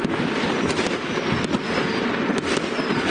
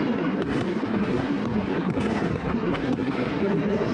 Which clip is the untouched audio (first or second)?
first